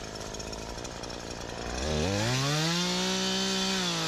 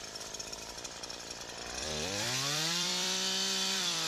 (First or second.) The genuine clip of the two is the first